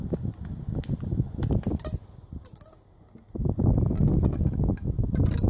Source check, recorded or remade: recorded